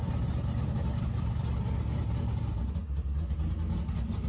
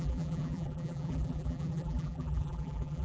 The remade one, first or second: second